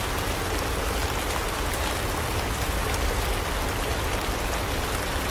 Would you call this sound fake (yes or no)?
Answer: no